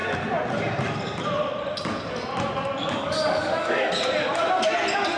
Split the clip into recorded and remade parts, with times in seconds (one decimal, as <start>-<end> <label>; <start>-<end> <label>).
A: 0.0-2.8 recorded; 2.8-3.9 remade; 3.9-5.2 recorded